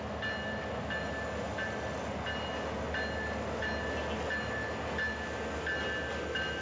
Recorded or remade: recorded